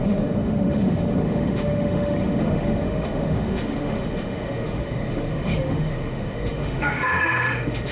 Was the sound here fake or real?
fake